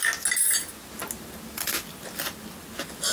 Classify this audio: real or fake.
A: real